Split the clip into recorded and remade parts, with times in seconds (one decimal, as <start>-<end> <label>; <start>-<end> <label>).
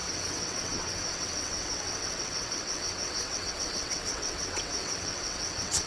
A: 0.0-5.9 remade